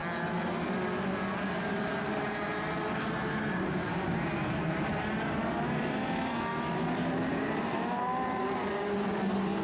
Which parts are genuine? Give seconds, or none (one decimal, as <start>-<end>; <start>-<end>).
0.0-1.5; 2.5-3.5; 6.5-7.3